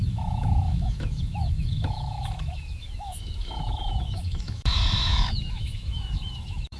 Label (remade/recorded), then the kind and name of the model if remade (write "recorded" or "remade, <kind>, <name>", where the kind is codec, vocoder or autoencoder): remade, autoencoder, DAC-VAE